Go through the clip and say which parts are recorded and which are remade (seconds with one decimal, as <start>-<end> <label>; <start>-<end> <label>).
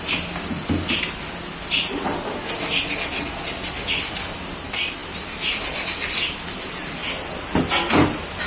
0.0-5.0 recorded; 5.0-6.6 remade; 6.6-8.5 recorded